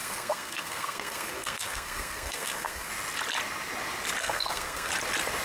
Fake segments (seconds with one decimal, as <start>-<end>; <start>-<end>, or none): 0.0-2.9; 4.2-4.9

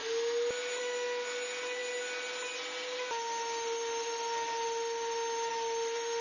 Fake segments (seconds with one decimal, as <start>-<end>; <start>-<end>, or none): none

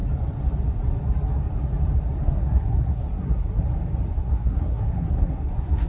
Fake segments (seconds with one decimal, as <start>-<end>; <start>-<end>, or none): 2.2-3.6; 4.1-5.9

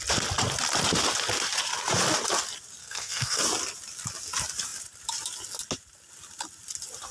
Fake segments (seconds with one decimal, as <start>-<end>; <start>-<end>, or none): 2.8-3.4

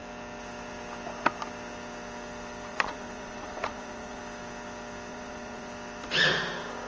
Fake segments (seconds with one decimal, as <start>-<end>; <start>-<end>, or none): 2.7-4.2; 5.1-5.7

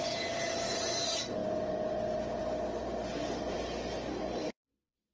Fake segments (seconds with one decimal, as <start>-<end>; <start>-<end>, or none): 4.1-5.1

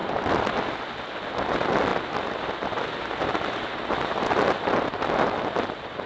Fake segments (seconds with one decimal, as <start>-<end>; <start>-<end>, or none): none

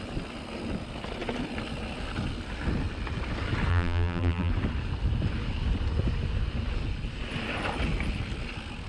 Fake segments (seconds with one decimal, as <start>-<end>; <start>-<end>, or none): 3.7-4.5